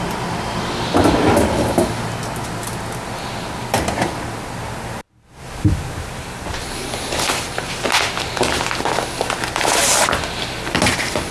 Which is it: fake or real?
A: real